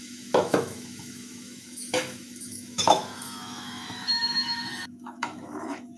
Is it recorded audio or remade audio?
remade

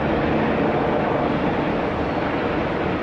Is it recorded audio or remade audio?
recorded